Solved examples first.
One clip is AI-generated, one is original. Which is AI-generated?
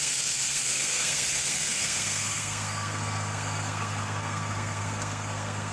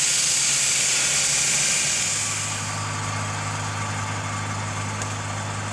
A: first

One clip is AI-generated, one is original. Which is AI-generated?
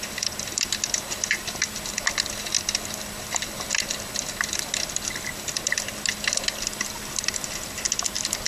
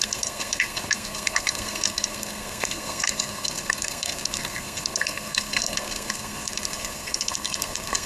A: second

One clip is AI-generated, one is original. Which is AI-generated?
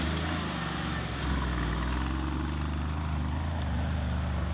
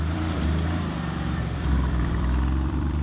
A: second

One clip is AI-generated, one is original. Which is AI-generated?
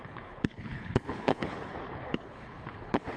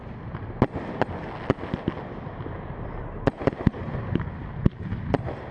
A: first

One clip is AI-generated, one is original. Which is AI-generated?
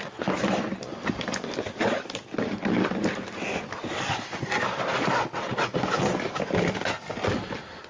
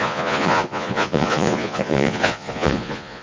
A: second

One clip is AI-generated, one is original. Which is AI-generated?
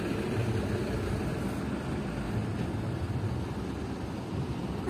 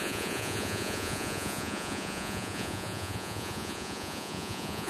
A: second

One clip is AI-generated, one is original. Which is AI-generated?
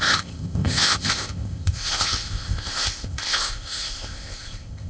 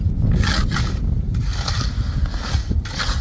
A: first